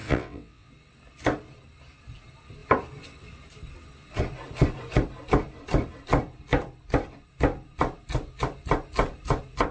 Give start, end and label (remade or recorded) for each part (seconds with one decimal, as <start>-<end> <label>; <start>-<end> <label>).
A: 0.0-0.7 remade; 0.7-9.7 recorded